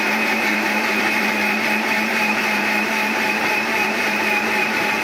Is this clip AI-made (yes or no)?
yes